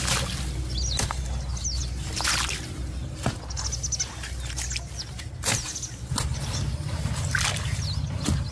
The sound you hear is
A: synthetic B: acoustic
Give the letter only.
B